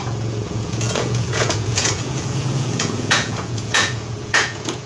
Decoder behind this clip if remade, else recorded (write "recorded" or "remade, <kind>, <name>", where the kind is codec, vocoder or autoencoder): remade, vocoder, Vocos